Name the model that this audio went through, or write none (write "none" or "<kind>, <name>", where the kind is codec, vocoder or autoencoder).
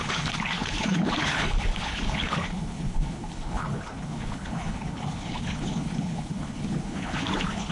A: codec, HILCodec